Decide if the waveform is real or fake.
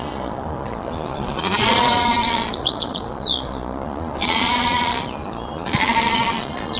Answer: fake